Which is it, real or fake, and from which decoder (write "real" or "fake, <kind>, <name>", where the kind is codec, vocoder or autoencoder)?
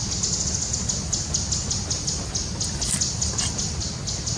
real